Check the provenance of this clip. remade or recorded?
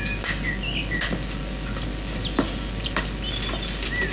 recorded